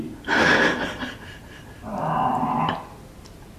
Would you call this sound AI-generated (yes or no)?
no